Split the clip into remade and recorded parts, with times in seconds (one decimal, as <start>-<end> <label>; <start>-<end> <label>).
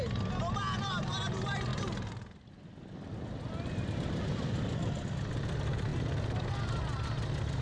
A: 0.0-7.6 recorded